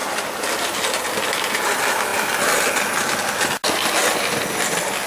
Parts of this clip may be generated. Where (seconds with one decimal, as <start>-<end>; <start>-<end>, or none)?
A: none